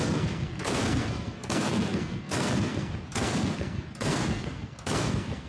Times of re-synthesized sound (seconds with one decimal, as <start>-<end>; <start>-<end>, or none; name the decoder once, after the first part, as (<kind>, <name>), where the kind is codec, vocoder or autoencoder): 0.0-5.5 (codec, SNAC)